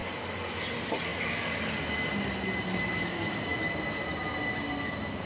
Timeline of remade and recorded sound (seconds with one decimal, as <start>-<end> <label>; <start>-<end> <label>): 0.0-5.3 recorded

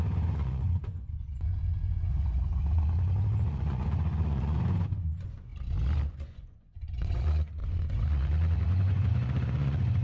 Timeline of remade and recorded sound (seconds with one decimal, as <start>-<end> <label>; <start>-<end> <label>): 0.0-2.8 remade; 2.8-3.4 recorded; 3.4-5.5 remade; 5.5-6.0 recorded; 6.0-10.0 remade

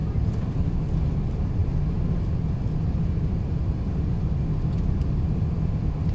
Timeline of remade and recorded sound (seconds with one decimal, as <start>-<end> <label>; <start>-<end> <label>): 0.0-6.1 recorded

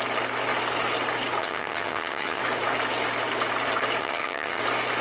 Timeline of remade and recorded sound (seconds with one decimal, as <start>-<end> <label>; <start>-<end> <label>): 0.0-1.4 recorded; 1.4-2.4 remade; 2.4-4.0 recorded; 4.0-4.6 remade; 4.6-5.0 recorded